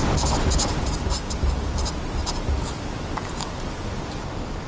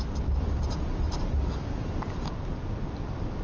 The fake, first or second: second